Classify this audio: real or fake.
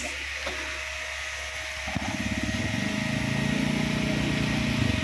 real